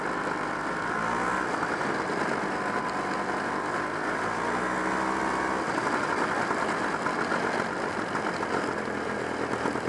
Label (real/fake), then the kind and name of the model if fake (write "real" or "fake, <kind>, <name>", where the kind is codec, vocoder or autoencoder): real